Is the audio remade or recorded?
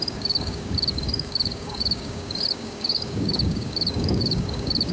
remade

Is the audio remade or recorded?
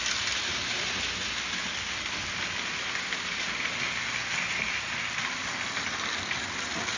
recorded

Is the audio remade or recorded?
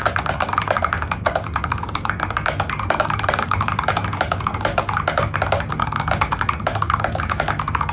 remade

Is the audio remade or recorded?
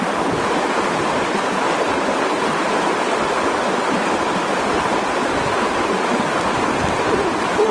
recorded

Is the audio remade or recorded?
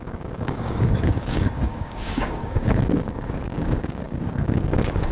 remade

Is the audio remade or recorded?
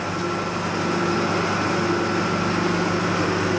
recorded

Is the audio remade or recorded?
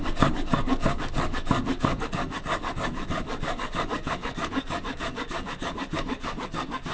remade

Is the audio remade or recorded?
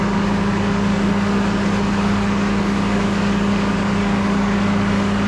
remade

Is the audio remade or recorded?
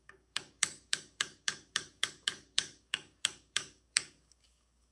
remade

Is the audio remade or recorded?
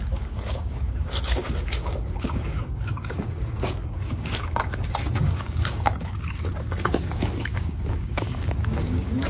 remade